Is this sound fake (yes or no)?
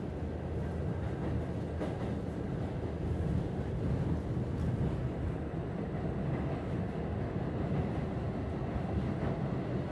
no